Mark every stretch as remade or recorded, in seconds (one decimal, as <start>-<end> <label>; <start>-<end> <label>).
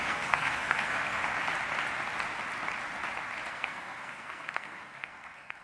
0.0-1.2 remade; 1.2-3.5 recorded; 3.5-5.6 remade